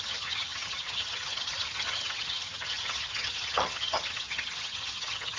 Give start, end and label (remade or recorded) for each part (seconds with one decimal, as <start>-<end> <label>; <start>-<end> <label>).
0.0-5.4 remade